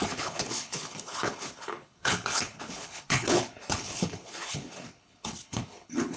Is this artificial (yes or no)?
yes